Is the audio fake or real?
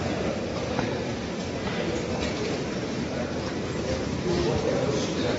fake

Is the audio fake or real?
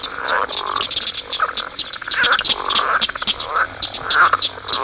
real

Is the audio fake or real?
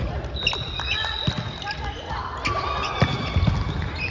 real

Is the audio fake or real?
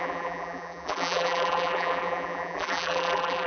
fake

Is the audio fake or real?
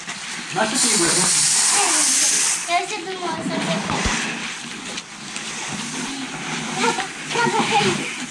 fake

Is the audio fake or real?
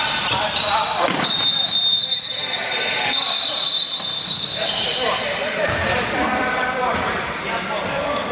fake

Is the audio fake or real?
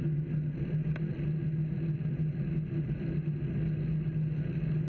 real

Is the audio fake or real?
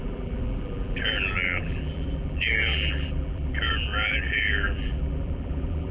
fake